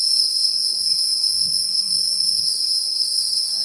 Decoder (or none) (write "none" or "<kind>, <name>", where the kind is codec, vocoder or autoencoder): codec, SNAC